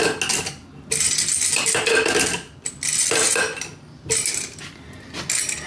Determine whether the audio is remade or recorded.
recorded